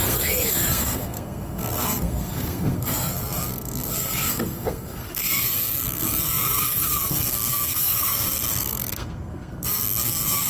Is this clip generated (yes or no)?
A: yes